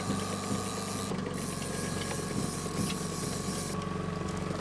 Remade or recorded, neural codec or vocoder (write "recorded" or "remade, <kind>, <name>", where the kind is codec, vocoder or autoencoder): recorded